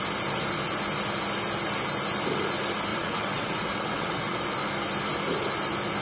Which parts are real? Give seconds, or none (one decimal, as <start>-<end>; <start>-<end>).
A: 0.0-2.9; 4.4-6.0

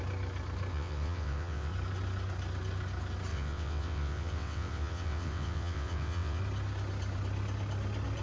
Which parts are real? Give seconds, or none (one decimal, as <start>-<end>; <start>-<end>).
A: 0.0-0.7; 1.7-3.3; 6.4-8.2

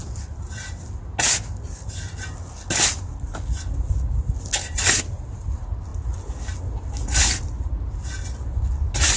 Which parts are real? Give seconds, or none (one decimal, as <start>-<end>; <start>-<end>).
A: 0.0-9.2

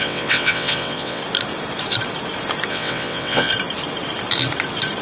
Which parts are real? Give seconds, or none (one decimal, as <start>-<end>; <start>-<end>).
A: 1.2-2.7; 3.5-5.0

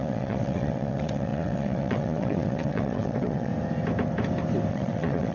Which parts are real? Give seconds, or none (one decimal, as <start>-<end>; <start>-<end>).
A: 3.5-4.7